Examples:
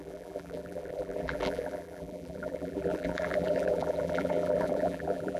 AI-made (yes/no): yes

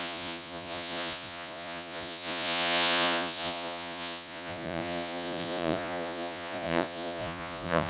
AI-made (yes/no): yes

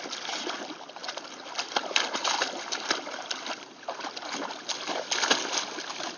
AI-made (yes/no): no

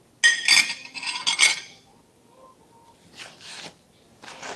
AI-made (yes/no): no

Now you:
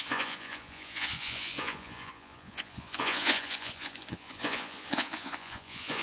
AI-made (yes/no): yes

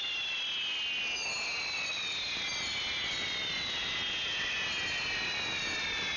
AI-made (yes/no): no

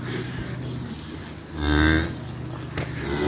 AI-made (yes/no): no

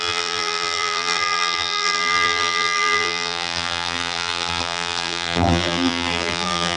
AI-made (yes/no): yes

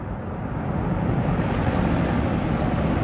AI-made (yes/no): no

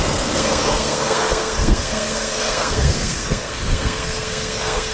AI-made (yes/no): yes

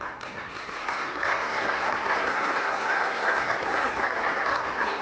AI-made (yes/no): yes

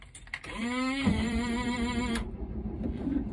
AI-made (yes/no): yes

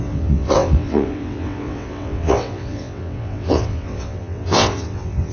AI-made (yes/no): yes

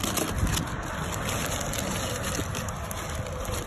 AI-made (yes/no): no